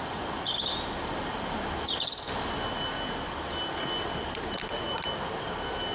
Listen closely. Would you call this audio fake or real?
real